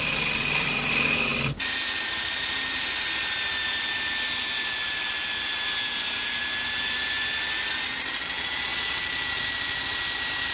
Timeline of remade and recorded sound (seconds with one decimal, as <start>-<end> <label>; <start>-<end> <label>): 0.0-10.5 recorded